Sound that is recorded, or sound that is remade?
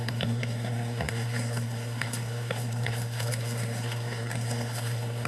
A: remade